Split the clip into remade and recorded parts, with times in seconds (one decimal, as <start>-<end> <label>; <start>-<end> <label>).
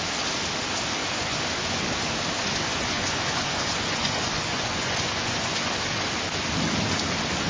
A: 0.0-1.0 recorded; 1.0-1.8 remade; 1.8-2.5 recorded; 2.5-5.7 remade; 5.7-7.5 recorded